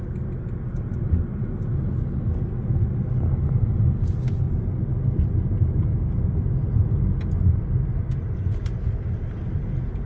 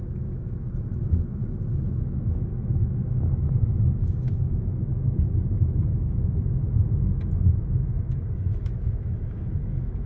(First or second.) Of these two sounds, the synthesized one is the second